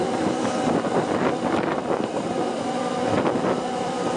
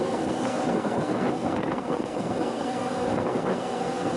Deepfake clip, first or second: second